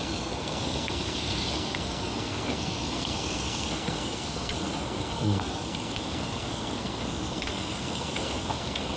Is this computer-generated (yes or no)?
yes